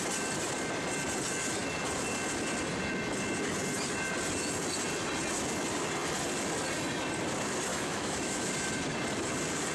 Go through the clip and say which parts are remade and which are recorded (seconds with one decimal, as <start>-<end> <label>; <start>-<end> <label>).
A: 0.0-7.7 recorded; 7.7-8.5 remade; 8.5-9.7 recorded